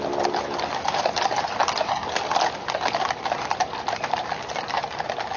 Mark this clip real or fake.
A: real